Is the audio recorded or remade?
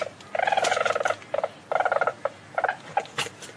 recorded